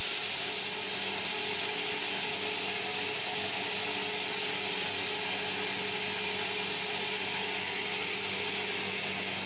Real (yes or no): yes